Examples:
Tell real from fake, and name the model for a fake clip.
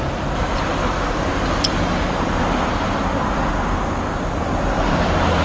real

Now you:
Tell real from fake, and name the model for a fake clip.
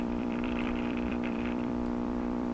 fake, vocoder, BigVGAN v2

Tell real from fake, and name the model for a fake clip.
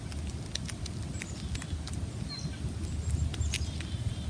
real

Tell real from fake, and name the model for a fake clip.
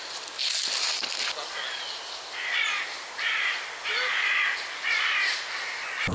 real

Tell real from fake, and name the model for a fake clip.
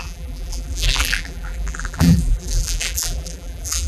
fake, vocoder, BigVGAN v2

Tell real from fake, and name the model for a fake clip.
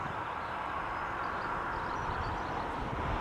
real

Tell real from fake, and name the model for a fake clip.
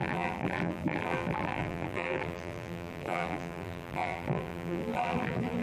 fake, vocoder, BigVGAN v2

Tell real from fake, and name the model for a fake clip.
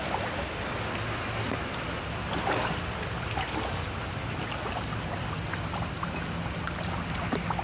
real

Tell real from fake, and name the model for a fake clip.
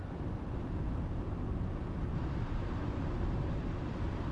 fake, vocoder, BigVGAN v2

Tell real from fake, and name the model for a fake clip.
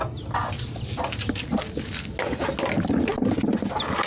real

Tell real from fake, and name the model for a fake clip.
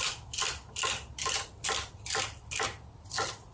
real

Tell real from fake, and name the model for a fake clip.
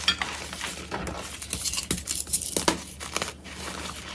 real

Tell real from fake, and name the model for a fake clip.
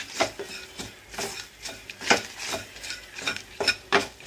fake, vocoder, BigVGAN v2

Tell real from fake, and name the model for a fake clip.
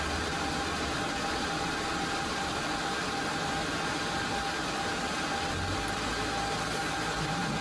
real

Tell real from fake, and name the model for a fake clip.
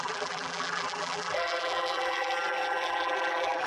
fake, vocoder, BigVGAN v2